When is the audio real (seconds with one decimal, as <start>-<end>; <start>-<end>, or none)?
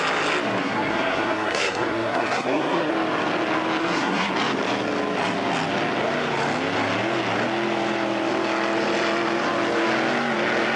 0.0-0.6; 2.9-3.8; 4.3-10.8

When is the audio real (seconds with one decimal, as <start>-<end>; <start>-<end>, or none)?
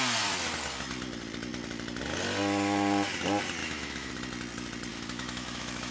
0.0-3.6; 4.1-4.9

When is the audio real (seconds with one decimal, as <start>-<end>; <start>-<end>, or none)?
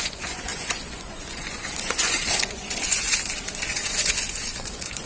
3.1-3.6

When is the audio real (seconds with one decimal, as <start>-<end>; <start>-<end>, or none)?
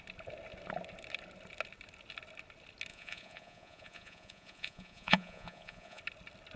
0.0-2.9; 6.0-6.6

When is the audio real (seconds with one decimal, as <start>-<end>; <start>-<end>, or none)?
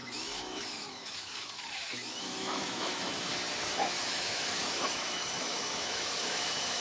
3.3-4.1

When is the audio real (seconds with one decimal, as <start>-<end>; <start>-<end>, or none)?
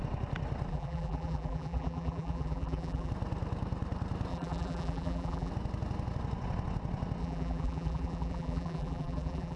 0.0-0.7; 3.1-4.3; 5.5-7.2